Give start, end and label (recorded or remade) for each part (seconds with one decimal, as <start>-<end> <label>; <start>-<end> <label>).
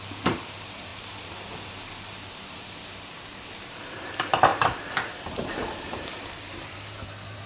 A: 0.0-0.9 remade; 0.9-3.8 recorded; 3.8-7.5 remade